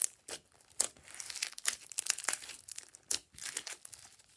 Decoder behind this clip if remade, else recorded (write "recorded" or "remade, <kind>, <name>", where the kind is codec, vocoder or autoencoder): recorded